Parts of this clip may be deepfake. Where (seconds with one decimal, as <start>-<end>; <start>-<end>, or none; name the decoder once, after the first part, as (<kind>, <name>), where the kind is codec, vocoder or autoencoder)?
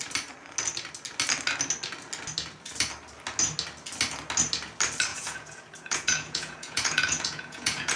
5.1-8.0 (vocoder, Vocos)